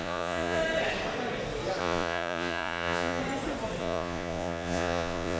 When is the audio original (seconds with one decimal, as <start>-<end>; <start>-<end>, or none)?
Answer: 0.6-1.8; 3.2-3.8

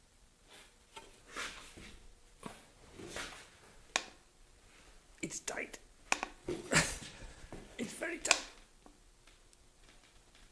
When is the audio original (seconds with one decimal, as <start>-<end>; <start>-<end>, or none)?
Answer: 0.0-6.4; 7.4-10.5

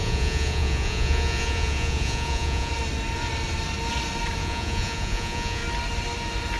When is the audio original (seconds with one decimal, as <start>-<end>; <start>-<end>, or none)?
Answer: 2.7-4.4; 5.6-6.6